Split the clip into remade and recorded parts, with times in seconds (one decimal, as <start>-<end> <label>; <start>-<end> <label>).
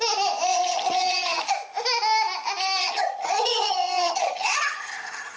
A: 0.0-0.5 recorded; 0.5-1.4 remade; 1.4-2.8 recorded; 2.8-5.4 remade